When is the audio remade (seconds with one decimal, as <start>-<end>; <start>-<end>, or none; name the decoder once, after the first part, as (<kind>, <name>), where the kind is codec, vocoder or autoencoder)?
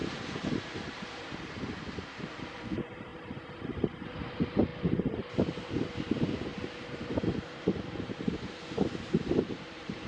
0.0-3.1 (vocoder, BigVGAN v2); 3.6-4.7; 5.5-10.1